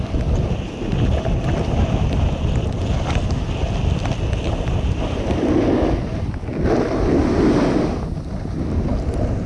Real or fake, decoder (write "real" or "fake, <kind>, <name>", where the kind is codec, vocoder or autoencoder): real